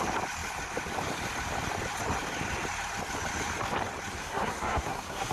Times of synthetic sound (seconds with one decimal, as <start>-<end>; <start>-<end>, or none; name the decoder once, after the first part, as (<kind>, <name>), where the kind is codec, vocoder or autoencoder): 4.2-5.3 (codec, SNAC)